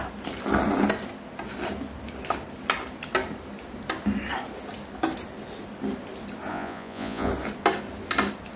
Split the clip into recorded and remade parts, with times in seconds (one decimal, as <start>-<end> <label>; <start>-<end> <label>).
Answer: 0.0-6.5 recorded; 6.5-7.3 remade; 7.3-8.6 recorded